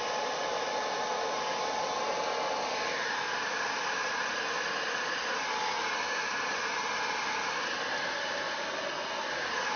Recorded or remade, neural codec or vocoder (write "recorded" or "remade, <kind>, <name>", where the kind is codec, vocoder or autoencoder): recorded